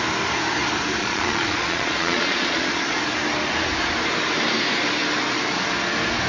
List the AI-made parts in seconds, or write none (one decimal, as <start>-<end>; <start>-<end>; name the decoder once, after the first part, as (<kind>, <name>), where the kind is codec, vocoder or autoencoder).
1.0-3.0 (vocoder, Vocos)